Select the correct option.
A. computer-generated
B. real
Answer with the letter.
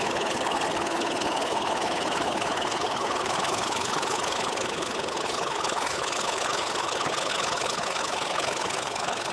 A